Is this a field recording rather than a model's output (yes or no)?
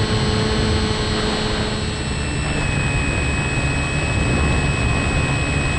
yes